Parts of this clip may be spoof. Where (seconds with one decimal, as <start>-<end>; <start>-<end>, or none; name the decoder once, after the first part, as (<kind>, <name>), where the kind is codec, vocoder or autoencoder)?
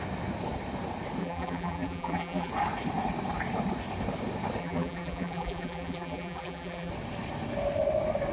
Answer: 1.2-2.5 (vocoder, BigVGAN v2); 4.6-6.9